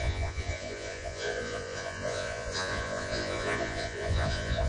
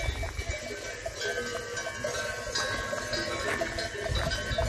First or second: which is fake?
first